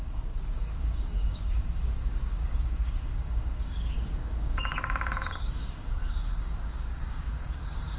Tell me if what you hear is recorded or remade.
remade